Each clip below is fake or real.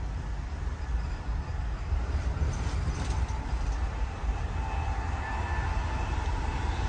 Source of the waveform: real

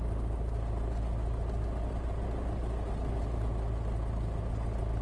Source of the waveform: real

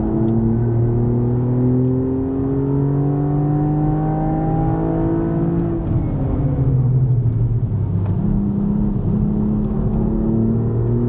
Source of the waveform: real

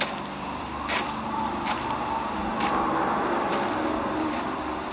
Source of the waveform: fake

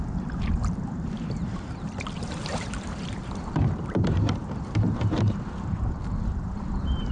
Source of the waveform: fake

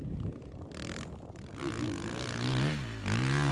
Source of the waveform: real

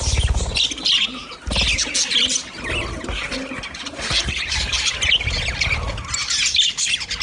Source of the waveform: real